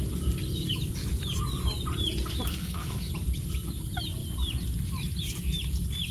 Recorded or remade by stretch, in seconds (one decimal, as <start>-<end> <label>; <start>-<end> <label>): 0.0-2.5 recorded; 2.5-3.1 remade; 3.1-6.1 recorded